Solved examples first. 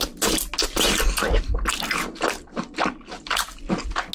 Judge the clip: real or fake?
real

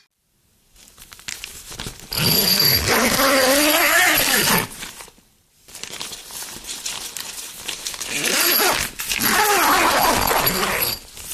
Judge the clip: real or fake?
real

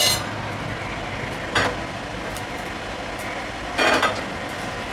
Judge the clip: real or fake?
real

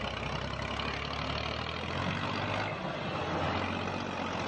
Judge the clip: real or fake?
real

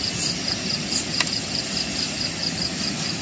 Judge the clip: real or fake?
real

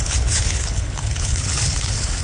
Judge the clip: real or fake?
fake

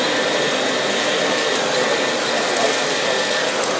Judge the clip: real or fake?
real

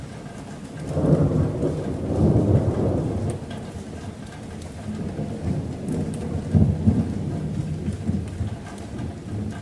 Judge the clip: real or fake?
real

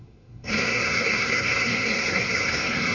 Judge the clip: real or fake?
fake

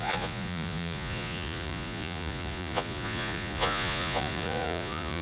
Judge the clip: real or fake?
fake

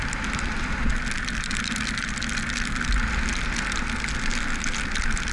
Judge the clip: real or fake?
real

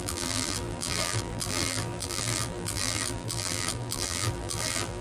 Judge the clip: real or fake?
fake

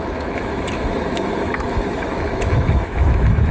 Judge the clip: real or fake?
fake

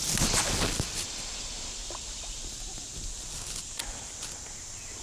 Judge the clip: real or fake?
real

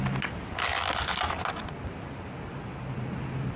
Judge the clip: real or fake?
real